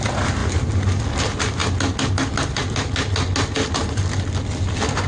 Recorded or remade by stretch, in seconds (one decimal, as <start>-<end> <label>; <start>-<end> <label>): 0.0-5.1 recorded